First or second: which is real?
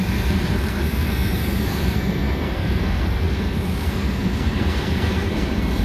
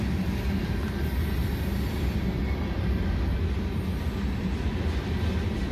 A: second